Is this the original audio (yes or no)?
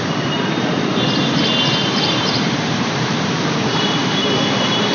no